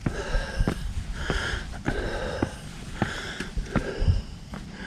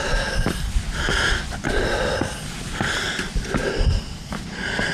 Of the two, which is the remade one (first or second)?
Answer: first